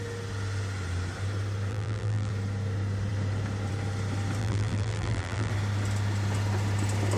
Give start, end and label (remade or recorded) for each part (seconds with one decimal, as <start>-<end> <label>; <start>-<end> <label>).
0.0-1.7 recorded; 1.7-2.3 remade; 2.3-4.4 recorded; 4.4-5.5 remade; 5.5-7.2 recorded